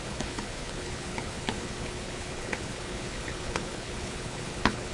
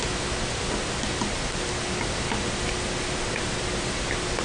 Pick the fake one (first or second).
first